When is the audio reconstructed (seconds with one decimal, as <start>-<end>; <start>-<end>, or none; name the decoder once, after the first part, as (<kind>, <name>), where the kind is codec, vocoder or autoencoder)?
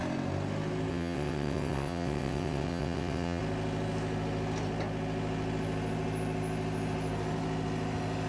0.9-3.4 (vocoder, WaveNeXt)